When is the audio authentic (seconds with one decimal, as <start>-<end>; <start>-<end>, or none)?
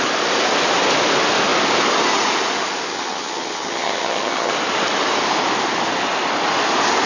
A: 0.0-2.9; 4.5-7.1